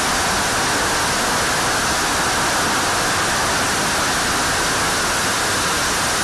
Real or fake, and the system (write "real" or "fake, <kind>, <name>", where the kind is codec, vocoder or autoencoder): real